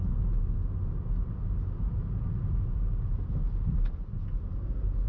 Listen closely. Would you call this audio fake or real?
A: real